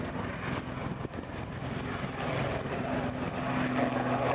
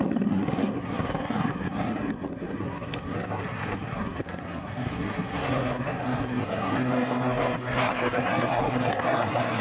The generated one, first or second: second